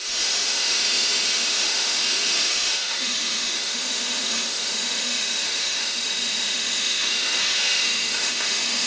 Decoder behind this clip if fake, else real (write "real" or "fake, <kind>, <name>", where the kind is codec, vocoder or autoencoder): fake, autoencoder, DAC-VAE